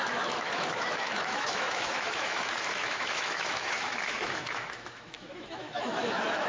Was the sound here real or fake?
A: fake